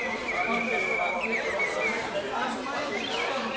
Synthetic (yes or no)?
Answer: no